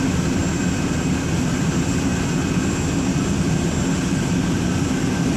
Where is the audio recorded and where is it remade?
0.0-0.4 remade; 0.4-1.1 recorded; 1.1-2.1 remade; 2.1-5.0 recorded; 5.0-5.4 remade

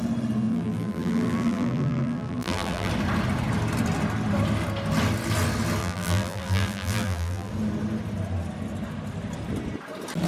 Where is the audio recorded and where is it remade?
0.0-0.5 recorded; 0.5-2.9 remade; 2.9-5.8 recorded; 5.8-7.5 remade; 7.5-10.3 recorded

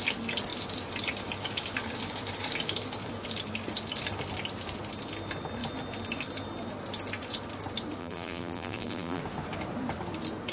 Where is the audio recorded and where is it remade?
0.0-8.0 recorded; 8.0-9.2 remade; 9.2-10.5 recorded

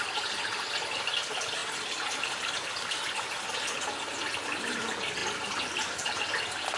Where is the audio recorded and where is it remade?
0.0-6.8 recorded

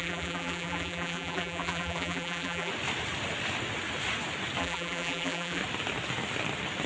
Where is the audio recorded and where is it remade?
0.0-2.7 remade; 2.7-4.6 recorded; 4.6-5.6 remade; 5.6-6.9 recorded

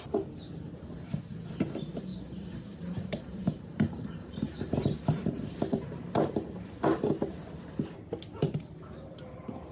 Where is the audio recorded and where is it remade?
0.0-2.1 recorded; 2.1-5.4 remade; 5.4-8.4 recorded; 8.4-9.7 remade

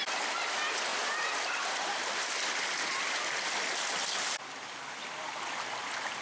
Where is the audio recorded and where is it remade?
0.0-6.2 recorded

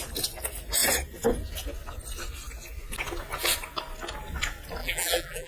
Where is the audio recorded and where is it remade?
0.0-4.8 recorded; 4.8-5.5 remade